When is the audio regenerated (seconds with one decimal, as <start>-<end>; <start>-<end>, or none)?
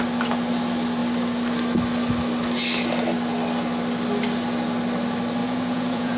5.4-6.2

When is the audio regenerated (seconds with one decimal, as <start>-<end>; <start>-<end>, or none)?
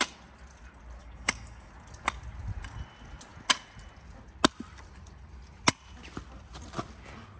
1.0-1.7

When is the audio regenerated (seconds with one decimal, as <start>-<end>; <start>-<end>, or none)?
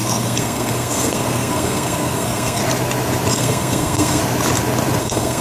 0.0-2.6; 3.3-4.2; 5.0-5.4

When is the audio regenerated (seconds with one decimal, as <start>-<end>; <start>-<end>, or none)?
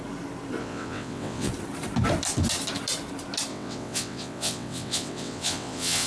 0.6-1.5; 3.5-6.1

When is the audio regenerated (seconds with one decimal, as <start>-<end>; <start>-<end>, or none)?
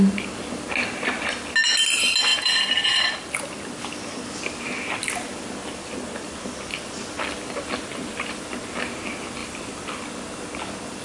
2.3-3.0; 7.9-9.0; 9.4-10.0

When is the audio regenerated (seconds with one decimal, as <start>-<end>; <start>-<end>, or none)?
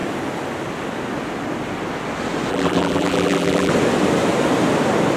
2.5-3.7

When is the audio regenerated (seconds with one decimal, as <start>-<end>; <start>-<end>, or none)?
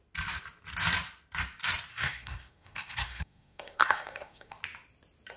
1.9-4.6